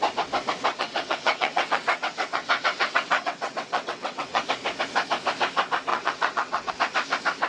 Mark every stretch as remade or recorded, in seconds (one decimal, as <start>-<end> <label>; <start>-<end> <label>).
0.0-0.7 recorded; 0.7-4.4 remade; 4.4-5.9 recorded; 5.9-6.7 remade; 6.7-7.5 recorded